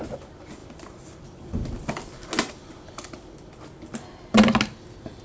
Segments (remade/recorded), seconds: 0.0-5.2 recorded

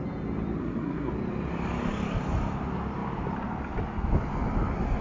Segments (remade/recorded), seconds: 0.0-0.6 recorded; 0.6-1.1 remade; 1.1-5.0 recorded

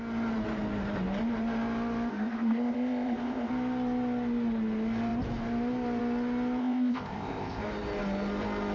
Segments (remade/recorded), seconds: 0.0-2.1 recorded; 2.1-3.5 remade; 3.5-6.6 recorded; 6.6-7.6 remade; 7.6-8.7 recorded

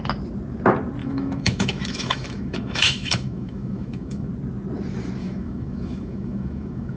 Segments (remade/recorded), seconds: 0.0-1.0 recorded; 1.0-4.3 remade; 4.3-5.2 recorded; 5.2-7.0 remade

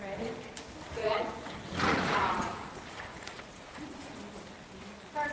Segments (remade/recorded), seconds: 0.0-1.0 recorded; 1.0-4.2 remade; 4.2-5.3 recorded

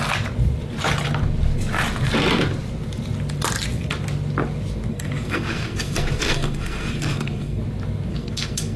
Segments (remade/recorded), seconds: 0.0-4.9 recorded; 4.9-7.6 remade; 7.6-8.1 recorded; 8.1-8.8 remade

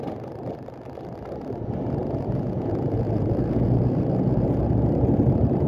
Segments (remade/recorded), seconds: 0.0-2.0 recorded; 2.0-4.7 remade; 4.7-5.7 recorded

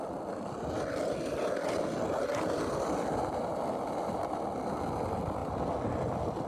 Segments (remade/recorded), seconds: 0.0-6.5 recorded